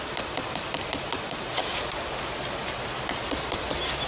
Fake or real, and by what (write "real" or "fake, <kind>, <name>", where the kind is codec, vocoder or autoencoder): real